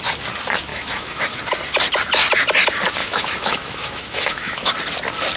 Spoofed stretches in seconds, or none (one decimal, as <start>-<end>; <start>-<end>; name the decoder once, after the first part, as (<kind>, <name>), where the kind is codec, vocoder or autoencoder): 0.7-1.2 (autoencoder, DAC-VAE); 3.0-4.7